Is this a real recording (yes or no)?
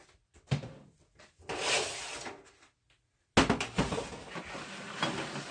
yes